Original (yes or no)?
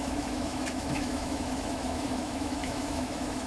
no